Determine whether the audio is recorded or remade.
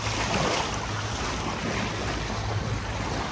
recorded